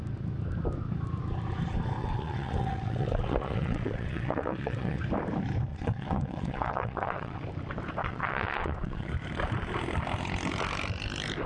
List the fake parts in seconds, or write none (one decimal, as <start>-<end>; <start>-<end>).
2.0-5.0; 5.7-7.4; 8.0-9.1